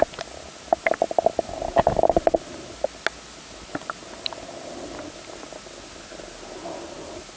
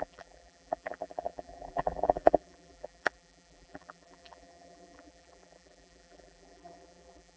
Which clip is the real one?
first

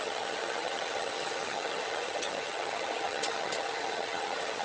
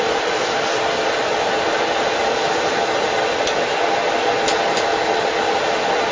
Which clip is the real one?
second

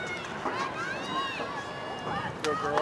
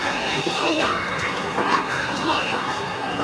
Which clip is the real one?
first